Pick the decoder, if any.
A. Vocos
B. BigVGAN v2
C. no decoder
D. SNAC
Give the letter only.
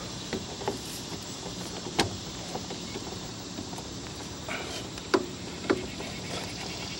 B